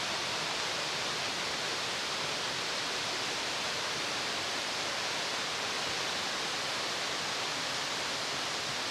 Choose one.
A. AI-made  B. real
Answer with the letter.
A